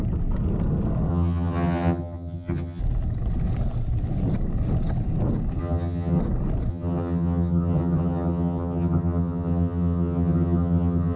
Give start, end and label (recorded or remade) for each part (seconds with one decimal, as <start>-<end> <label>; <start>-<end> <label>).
0.0-1.1 recorded; 1.1-2.8 remade; 2.8-5.6 recorded; 5.6-6.2 remade; 6.2-6.7 recorded; 6.7-11.2 remade